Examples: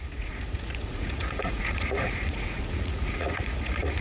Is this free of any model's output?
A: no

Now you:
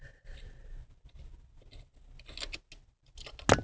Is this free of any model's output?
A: yes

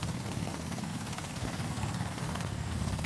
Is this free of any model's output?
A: no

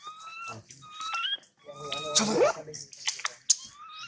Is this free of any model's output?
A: yes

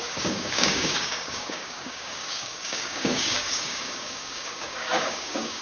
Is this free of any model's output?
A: no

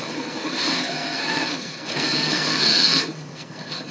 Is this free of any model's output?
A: no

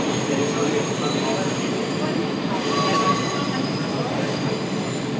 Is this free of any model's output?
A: yes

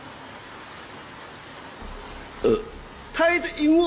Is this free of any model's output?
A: yes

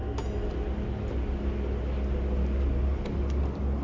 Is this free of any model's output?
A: yes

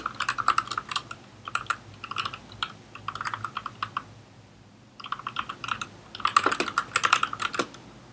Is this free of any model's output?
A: yes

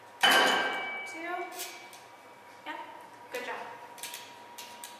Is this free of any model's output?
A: yes